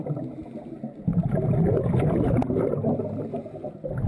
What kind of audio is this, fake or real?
real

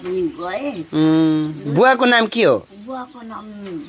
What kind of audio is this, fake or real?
real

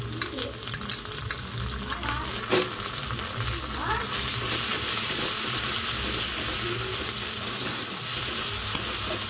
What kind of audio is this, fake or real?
real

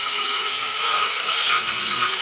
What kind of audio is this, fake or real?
fake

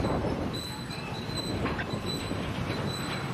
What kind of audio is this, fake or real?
real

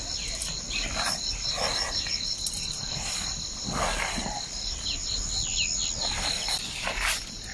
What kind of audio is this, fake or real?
real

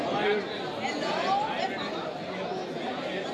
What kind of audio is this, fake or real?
real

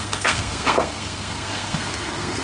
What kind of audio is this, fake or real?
fake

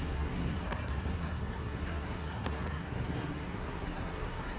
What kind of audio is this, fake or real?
fake